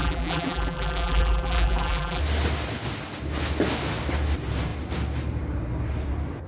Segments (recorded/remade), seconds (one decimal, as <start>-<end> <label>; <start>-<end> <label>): 0.0-2.2 remade; 2.2-6.5 recorded